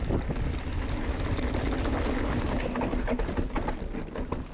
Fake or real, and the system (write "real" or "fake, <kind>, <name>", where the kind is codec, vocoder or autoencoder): real